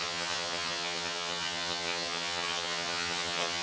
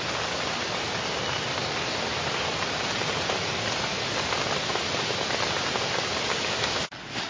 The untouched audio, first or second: second